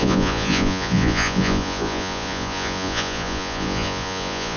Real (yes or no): no